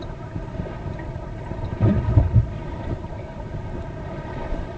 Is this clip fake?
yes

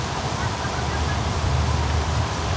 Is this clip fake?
yes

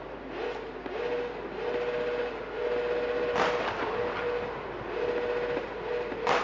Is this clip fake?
no